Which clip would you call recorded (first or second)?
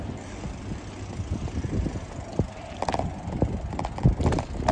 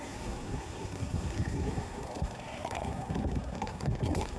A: first